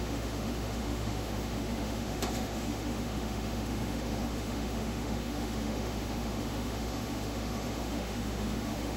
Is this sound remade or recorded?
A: remade